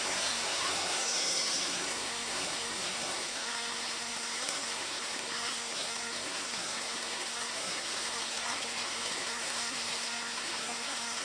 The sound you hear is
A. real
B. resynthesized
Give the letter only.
B